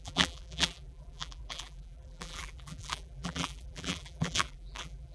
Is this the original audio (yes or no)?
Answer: no